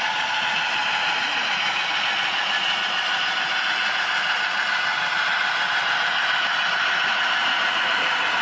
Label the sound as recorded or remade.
recorded